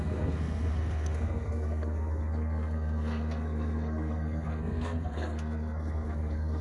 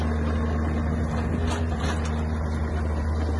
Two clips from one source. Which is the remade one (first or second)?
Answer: first